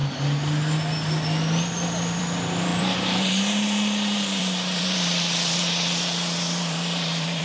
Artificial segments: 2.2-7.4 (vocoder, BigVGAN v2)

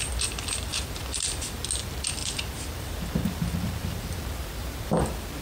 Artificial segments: 0.7-1.6 (vocoder, BigVGAN v2); 2.2-5.0

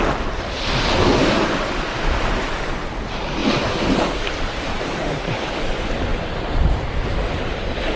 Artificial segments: 3.4-5.3 (vocoder, BigVGAN v2); 6.1-6.9

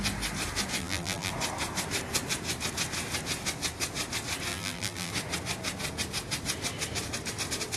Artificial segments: 0.8-1.3 (vocoder, BigVGAN v2); 4.5-5.1

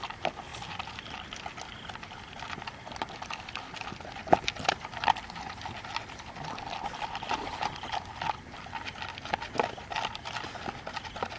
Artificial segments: none

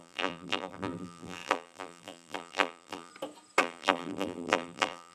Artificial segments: 0.0-3.1 (vocoder, BigVGAN v2); 3.6-5.1